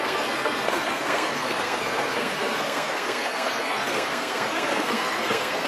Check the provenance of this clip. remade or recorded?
remade